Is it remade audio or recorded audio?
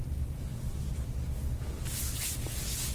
recorded